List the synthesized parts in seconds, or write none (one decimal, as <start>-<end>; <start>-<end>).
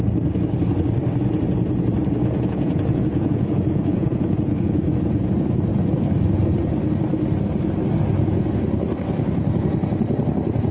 2.2-5.3